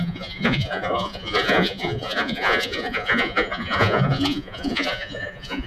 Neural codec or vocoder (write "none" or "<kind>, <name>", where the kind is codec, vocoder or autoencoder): vocoder, Vocos